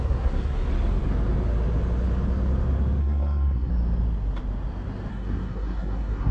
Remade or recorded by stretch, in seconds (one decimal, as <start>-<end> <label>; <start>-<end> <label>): 0.0-0.7 remade; 0.7-3.0 recorded; 3.0-3.7 remade; 3.7-5.1 recorded; 5.1-6.3 remade